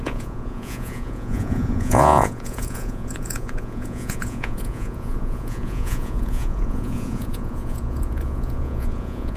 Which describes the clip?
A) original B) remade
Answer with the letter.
B